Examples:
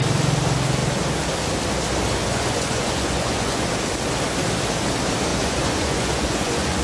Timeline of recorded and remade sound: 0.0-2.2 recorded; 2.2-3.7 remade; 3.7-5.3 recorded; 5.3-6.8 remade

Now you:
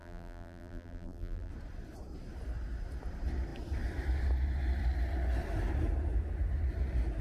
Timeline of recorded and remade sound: 0.0-1.5 remade; 1.5-7.2 recorded

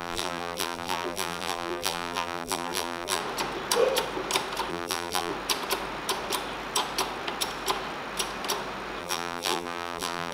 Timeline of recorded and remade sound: 0.0-3.2 remade; 3.2-4.7 recorded; 4.7-5.3 remade; 5.3-9.0 recorded; 9.0-10.3 remade

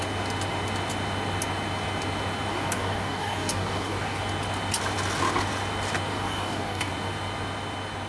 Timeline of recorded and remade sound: 0.0-2.5 recorded; 2.5-4.2 remade; 4.2-6.1 recorded; 6.1-6.9 remade; 6.9-8.1 recorded

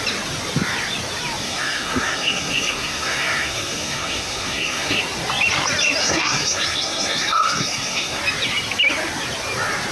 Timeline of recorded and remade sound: 0.0-1.4 recorded; 1.4-5.0 remade; 5.0-6.0 recorded; 6.0-8.2 remade; 8.2-9.9 recorded